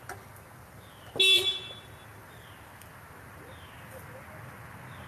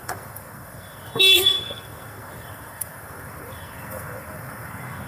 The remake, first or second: second